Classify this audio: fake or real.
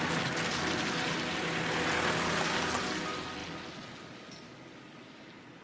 real